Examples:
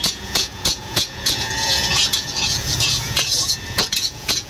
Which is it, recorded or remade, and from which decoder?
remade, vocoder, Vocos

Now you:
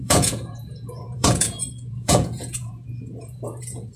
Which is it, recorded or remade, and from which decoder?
remade, vocoder, Vocos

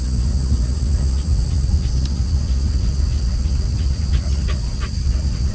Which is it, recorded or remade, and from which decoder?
remade, vocoder, Vocos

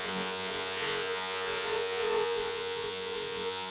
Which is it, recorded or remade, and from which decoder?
remade, vocoder, Vocos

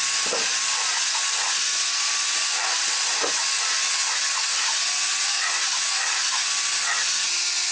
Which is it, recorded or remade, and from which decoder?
recorded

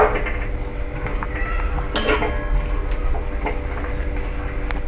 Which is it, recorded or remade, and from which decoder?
recorded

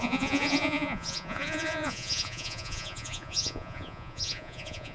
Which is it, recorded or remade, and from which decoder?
remade, vocoder, Vocos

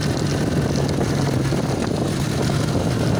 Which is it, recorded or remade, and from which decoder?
recorded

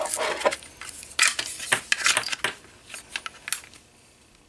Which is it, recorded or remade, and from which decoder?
recorded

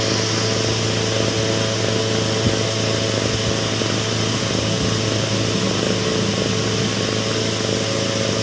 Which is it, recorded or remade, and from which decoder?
recorded